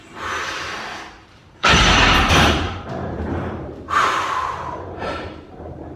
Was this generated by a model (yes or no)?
yes